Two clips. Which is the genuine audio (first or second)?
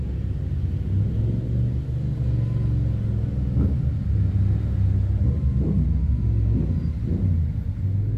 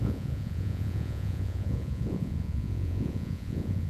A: first